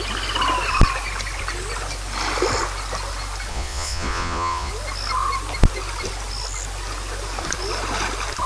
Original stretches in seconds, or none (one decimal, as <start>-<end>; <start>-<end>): 0.0-3.5; 4.7-8.5